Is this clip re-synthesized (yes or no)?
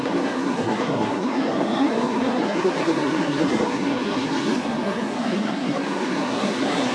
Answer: yes